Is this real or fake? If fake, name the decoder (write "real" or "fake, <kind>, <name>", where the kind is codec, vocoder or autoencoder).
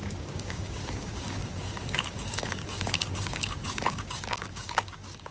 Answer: fake, codec, DAC